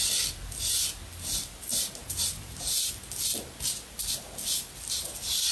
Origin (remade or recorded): recorded